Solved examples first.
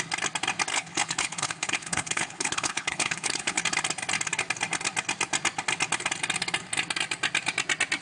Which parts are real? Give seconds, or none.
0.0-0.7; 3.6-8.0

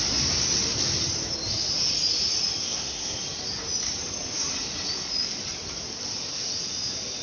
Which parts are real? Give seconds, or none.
0.0-2.6; 3.2-7.2

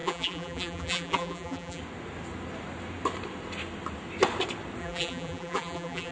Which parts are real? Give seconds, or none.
1.8-4.8

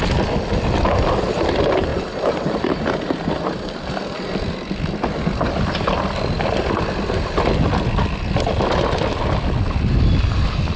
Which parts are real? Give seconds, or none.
0.0-10.8

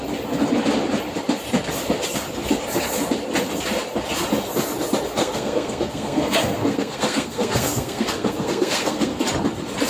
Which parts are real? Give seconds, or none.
0.0-5.2; 9.2-9.9

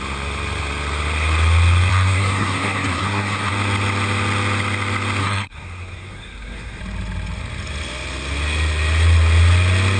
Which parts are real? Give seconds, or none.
0.0-1.9; 3.5-5.2; 6.8-10.0